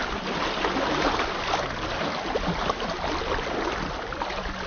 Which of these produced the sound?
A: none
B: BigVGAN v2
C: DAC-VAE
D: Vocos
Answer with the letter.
A